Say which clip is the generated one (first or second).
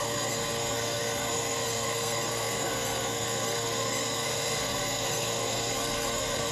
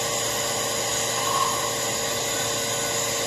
first